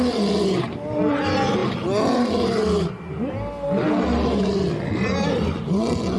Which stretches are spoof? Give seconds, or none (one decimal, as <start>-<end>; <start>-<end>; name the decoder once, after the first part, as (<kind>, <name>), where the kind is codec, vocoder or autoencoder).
none